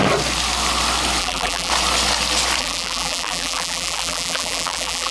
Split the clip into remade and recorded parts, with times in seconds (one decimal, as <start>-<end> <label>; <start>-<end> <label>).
0.0-1.2 recorded; 1.2-1.7 remade; 1.7-2.6 recorded; 2.6-5.1 remade